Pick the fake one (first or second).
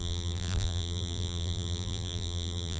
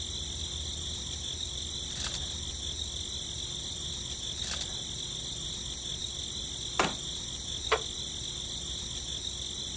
first